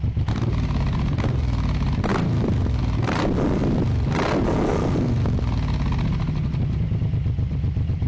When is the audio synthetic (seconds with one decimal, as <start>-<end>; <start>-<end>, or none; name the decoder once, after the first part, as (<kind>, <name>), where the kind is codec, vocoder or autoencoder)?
0.0-3.6 (vocoder, BigVGAN v2); 7.0-8.1